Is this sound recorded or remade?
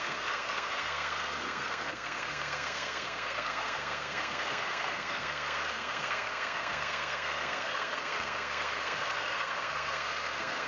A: remade